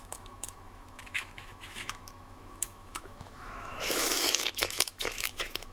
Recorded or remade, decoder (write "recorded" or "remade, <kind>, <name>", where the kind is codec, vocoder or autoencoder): remade, autoencoder, DAC-VAE